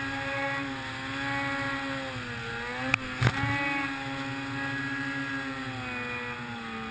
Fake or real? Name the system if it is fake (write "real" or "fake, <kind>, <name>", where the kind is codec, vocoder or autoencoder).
real